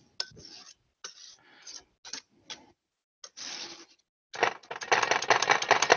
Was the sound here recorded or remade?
recorded